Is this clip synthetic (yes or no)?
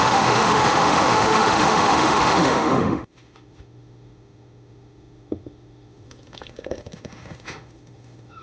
yes